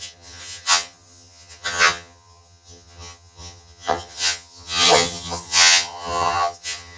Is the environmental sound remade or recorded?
remade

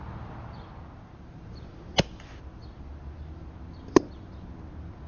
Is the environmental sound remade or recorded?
recorded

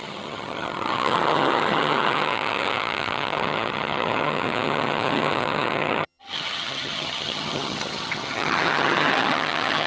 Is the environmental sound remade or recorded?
remade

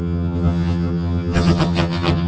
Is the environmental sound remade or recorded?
remade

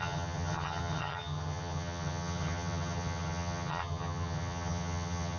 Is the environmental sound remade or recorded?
remade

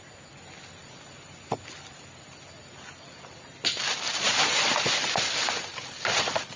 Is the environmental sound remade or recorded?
recorded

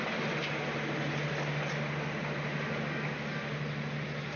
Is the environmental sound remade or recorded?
recorded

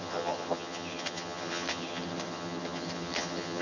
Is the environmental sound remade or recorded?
remade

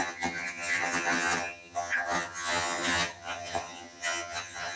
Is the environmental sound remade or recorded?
remade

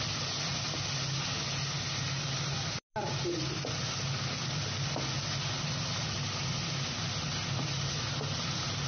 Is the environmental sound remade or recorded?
recorded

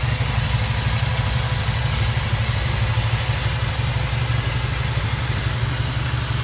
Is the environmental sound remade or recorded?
recorded